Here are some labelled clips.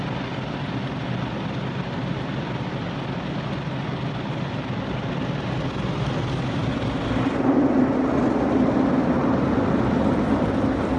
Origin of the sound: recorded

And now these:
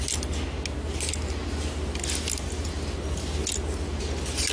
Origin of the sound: recorded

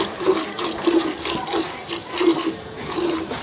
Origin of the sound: recorded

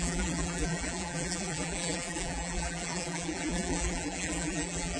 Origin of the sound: remade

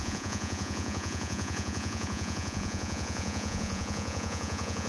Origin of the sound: remade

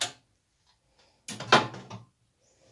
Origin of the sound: recorded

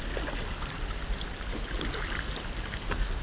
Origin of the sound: recorded